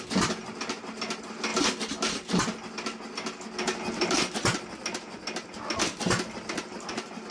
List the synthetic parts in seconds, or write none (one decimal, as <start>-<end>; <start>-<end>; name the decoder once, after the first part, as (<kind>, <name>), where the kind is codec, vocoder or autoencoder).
none

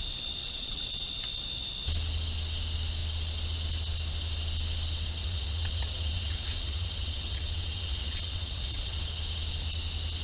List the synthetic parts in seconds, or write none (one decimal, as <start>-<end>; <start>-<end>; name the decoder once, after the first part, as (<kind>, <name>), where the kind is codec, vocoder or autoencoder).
0.4-1.1 (vocoder, WaveNeXt); 5.2-9.0

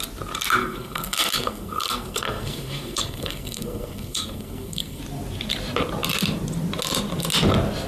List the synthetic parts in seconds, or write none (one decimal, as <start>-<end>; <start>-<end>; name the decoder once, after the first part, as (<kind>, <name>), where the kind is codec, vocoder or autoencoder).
0.6-5.0 (codec, SNAC)

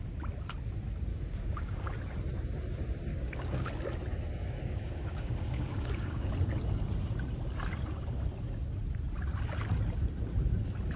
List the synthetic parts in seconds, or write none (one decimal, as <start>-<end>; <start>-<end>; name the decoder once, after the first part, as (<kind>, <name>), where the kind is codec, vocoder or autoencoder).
1.1-1.9 (codec, DAC); 3.1-3.7; 4.4-6.3

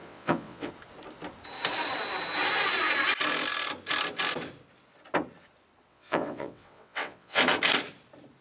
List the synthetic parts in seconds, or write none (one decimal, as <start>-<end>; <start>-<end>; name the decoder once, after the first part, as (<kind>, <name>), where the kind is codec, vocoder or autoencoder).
0.0-0.7 (vocoder, WaveNeXt); 5.9-7.4

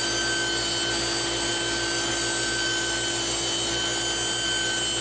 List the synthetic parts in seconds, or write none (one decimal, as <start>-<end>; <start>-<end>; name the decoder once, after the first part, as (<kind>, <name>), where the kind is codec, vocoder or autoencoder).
none